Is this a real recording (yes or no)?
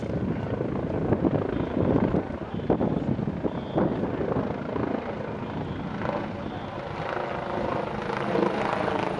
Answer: yes